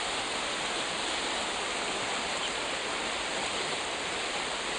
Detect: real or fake real